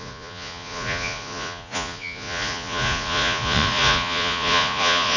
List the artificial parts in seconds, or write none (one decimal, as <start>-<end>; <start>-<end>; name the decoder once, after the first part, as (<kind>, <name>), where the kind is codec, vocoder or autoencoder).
0.0-5.2 (vocoder, Vocos)